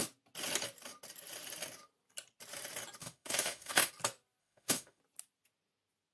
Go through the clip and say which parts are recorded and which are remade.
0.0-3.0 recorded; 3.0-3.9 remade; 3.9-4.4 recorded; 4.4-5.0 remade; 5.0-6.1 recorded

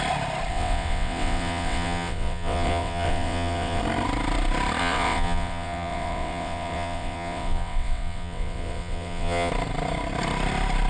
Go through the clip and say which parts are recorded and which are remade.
0.0-0.5 recorded; 0.5-3.8 remade; 3.8-4.8 recorded; 4.8-9.5 remade; 9.5-10.9 recorded

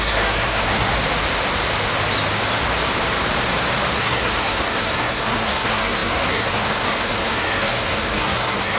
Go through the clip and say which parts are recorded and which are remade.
0.0-0.9 remade; 0.9-4.0 recorded; 4.0-8.8 remade

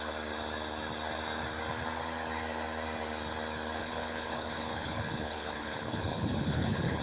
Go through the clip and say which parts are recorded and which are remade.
0.0-3.8 recorded; 3.8-7.0 remade

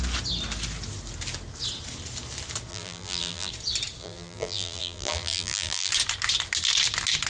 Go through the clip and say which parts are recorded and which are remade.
0.0-2.7 recorded; 2.7-3.5 remade; 3.5-4.0 recorded; 4.0-5.9 remade; 5.9-7.3 recorded

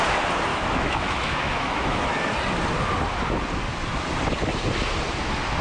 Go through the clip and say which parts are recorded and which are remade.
0.0-0.5 recorded; 0.5-2.1 remade; 2.1-5.6 recorded